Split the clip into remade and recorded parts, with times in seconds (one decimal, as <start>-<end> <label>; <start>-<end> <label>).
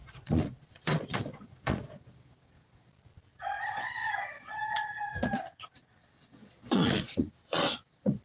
0.0-2.9 remade; 2.9-3.3 recorded; 3.3-8.2 remade